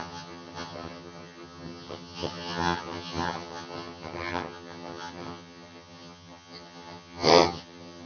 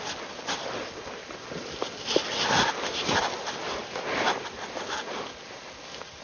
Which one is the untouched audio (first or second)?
second